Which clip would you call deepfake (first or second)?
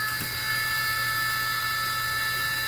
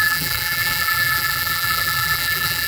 second